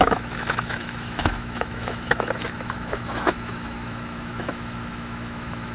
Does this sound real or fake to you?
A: fake